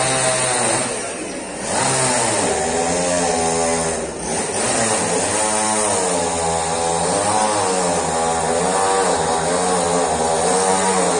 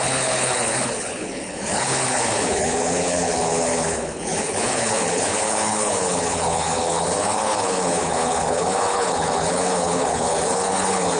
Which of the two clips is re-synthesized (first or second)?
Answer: second